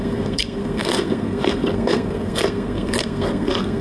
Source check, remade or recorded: remade